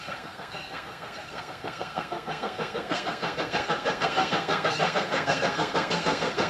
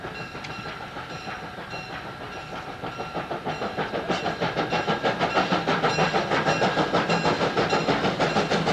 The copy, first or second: first